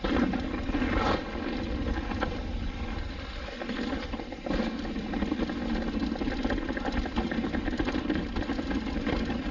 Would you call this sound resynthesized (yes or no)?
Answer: no